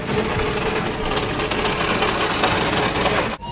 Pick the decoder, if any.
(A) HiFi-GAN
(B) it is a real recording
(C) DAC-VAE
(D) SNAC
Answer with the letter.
B